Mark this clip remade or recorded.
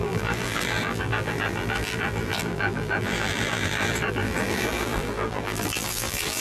remade